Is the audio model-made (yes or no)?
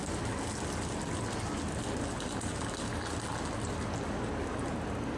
no